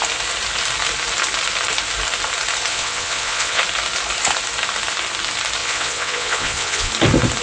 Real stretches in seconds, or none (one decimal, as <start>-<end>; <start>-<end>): 0.0-2.7; 3.6-5.6; 6.9-7.4